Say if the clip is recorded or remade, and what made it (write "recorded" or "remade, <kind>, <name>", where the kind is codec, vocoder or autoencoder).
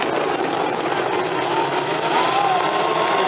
recorded